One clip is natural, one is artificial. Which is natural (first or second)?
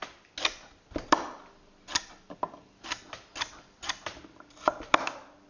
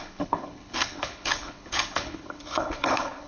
first